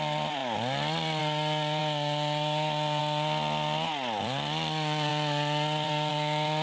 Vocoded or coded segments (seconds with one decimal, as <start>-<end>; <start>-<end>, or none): 0.0-1.8; 3.0-6.6